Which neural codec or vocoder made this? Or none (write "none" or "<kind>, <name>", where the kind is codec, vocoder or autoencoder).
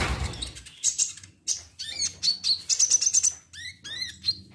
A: none